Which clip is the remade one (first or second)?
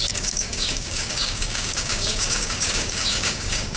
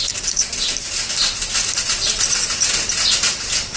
first